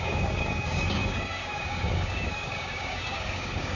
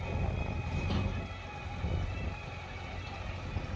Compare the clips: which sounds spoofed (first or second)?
first